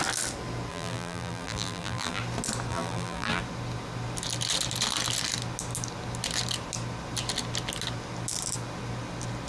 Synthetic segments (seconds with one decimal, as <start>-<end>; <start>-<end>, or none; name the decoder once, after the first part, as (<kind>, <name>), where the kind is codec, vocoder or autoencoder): 0.7-2.2 (vocoder, BigVGAN v2); 2.7-3.4